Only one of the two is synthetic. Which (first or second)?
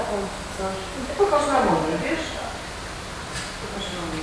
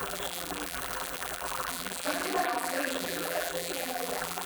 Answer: second